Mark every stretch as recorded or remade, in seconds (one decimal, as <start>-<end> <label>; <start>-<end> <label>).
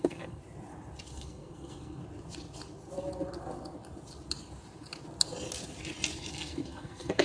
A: 0.0-0.4 remade; 0.4-1.1 recorded; 1.1-2.0 remade; 2.0-6.3 recorded; 6.3-7.2 remade